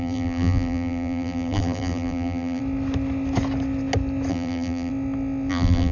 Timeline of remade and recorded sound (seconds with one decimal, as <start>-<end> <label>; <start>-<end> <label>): 0.0-2.6 remade; 2.6-4.3 recorded; 4.3-4.9 remade; 4.9-5.5 recorded; 5.5-5.9 remade